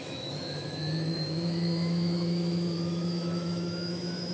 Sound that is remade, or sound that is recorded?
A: remade